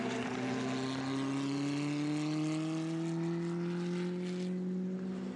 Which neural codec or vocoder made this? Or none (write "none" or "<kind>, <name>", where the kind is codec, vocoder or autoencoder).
none